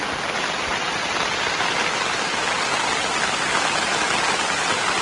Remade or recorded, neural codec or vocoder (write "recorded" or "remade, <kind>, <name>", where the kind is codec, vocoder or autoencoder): recorded